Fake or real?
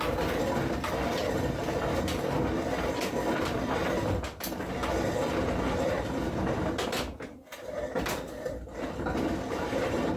real